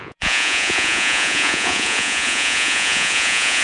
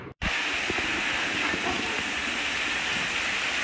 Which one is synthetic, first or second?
first